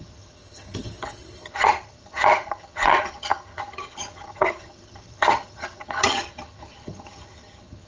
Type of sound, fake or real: fake